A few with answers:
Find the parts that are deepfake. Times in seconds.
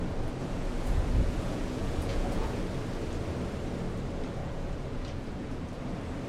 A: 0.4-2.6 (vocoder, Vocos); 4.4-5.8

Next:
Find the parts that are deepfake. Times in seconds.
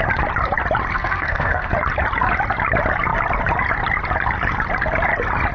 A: 0.9-1.7 (codec, SNAC)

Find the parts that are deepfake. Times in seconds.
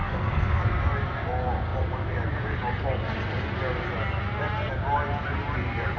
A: 0.0-0.6 (codec, SNAC)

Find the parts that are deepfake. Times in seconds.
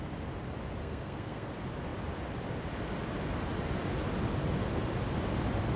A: 0.8-1.5 (codec, SNAC)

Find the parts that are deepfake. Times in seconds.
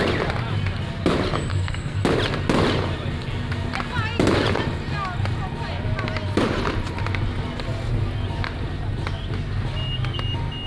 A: 1.5-2.0 (codec, SNAC)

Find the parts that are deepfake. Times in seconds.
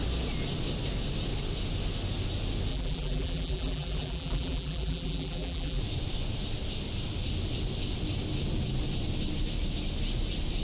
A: 2.7-5.8 (vocoder, BigVGAN v2)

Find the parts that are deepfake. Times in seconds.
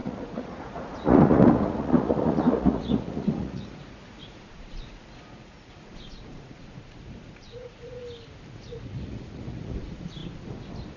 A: 0.0-8.0 (vocoder, Vocos); 8.5-10.2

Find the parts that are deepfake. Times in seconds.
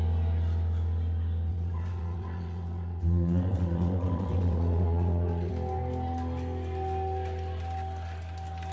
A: 1.5-5.5 (vocoder, WaveNeXt)